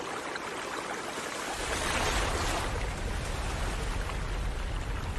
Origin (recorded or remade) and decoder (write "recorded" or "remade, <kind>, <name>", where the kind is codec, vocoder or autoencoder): recorded